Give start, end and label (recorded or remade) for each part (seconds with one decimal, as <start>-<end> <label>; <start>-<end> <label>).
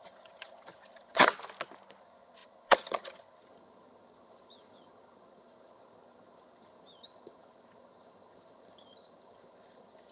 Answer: 0.0-1.3 remade; 1.3-2.0 recorded; 2.0-10.1 remade